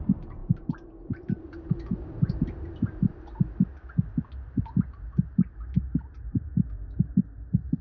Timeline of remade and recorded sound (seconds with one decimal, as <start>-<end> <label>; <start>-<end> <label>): 0.0-3.7 remade; 3.7-4.5 recorded; 4.5-6.5 remade; 6.5-7.1 recorded; 7.1-7.8 remade